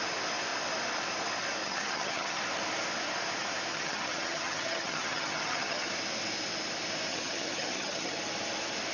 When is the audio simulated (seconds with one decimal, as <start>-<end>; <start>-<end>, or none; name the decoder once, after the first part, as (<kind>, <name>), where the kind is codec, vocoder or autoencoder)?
1.6-2.4 (vocoder, HiFi-GAN); 3.7-5.9; 7.1-8.2